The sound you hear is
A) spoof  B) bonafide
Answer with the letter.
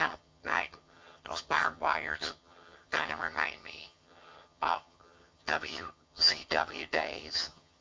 A